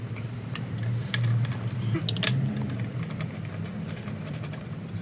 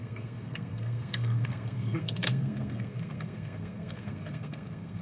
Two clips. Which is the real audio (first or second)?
first